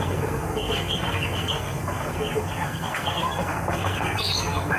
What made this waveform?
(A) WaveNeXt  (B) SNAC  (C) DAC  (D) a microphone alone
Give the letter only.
B